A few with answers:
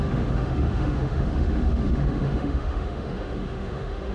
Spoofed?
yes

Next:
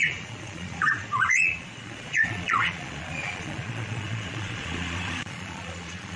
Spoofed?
yes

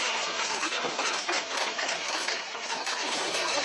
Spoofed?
yes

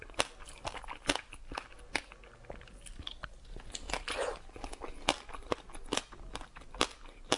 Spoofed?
no